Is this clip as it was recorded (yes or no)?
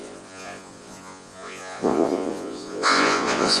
no